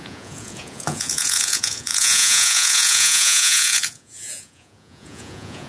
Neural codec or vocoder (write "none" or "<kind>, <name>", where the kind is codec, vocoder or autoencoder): vocoder, Vocos